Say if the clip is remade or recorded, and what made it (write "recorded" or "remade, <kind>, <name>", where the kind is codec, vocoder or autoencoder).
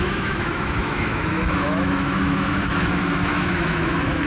remade, autoencoder, DAC-VAE